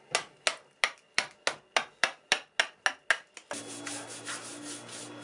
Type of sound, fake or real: real